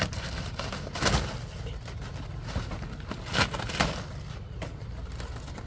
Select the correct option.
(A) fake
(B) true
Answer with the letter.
B